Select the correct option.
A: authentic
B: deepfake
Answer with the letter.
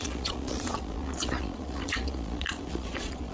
B